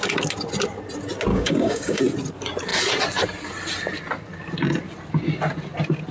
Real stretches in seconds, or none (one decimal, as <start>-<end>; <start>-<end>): 0.0-1.3; 2.0-6.1